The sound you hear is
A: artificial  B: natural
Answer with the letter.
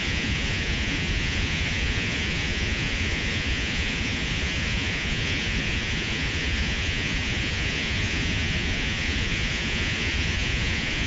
A